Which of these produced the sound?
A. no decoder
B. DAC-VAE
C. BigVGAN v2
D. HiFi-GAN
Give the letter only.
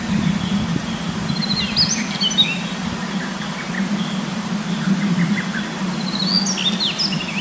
A